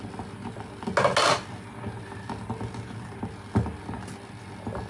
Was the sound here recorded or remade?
recorded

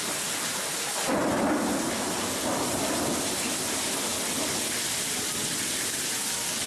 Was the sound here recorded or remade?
recorded